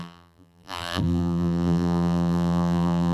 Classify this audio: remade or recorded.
remade